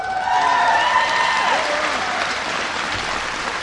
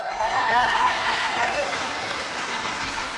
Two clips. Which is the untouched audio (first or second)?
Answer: first